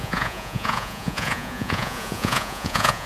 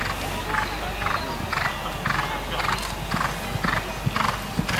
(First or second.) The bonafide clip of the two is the second